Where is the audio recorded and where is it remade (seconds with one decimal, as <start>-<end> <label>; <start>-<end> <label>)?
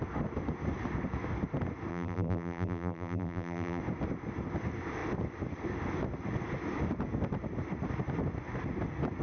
0.0-1.9 recorded; 1.9-3.8 remade; 3.8-9.2 recorded